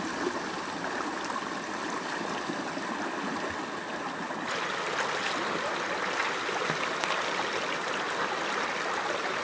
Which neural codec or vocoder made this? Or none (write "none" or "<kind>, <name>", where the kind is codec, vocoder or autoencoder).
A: none